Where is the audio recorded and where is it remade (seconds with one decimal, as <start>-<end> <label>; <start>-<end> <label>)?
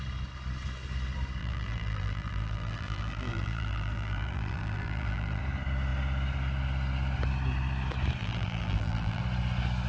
0.0-1.4 recorded; 1.4-5.4 remade; 5.4-8.2 recorded; 8.2-9.2 remade; 9.2-9.9 recorded